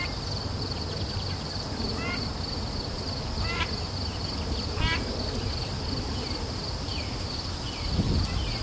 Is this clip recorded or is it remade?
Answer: recorded